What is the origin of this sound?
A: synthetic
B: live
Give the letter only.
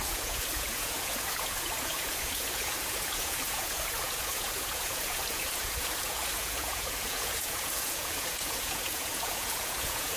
A